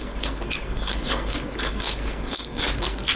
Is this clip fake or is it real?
fake